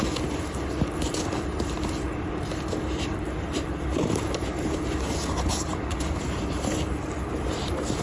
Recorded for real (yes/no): yes